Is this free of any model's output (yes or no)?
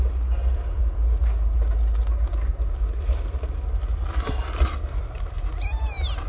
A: yes